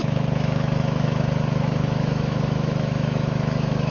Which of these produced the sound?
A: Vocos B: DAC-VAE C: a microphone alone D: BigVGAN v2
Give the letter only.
B